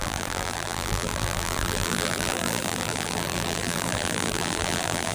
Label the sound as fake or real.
fake